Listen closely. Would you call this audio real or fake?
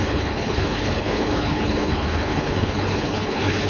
fake